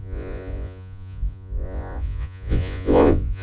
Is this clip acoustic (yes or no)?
no